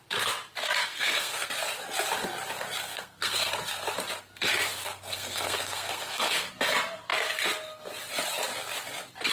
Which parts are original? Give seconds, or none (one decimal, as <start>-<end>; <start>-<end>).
0.0-0.8; 1.5-2.8; 3.5-4.7; 6.5-9.3